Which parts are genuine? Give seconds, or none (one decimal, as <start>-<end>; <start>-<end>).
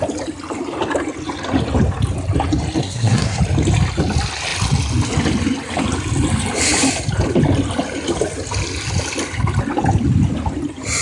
0.0-2.8; 3.4-11.0